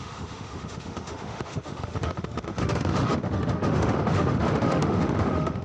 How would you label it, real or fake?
fake